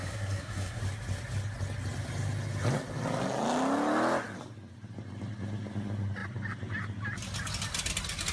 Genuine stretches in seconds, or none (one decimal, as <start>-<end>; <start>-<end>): 0.8-8.3